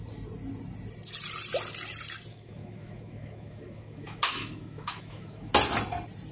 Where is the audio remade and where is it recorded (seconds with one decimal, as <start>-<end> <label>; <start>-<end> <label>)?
0.0-2.3 recorded; 2.3-5.5 remade; 5.5-6.3 recorded